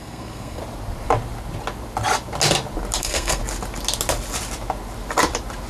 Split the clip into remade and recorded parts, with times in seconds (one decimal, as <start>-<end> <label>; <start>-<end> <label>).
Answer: 0.0-0.6 remade; 0.6-3.0 recorded; 3.0-3.4 remade; 3.4-5.7 recorded